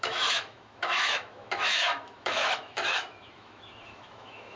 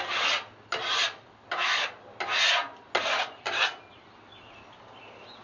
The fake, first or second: first